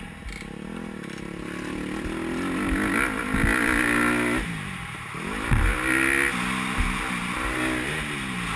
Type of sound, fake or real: real